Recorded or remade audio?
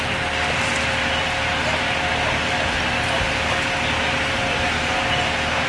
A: recorded